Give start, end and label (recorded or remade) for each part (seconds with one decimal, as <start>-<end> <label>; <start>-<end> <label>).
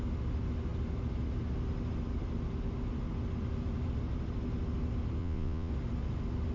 0.0-5.2 recorded; 5.2-5.7 remade; 5.7-6.5 recorded